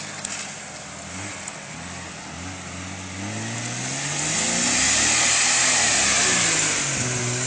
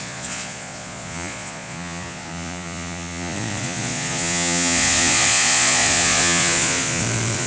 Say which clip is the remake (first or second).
second